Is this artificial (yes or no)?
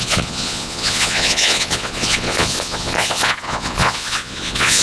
yes